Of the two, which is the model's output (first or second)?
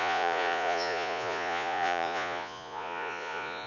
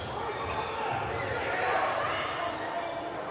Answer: first